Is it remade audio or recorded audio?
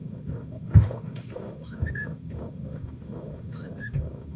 remade